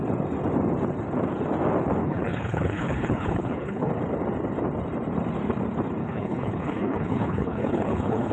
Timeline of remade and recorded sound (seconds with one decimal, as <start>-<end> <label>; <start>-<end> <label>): 0.0-2.0 recorded; 2.0-3.9 remade; 3.9-6.0 recorded; 6.0-8.3 remade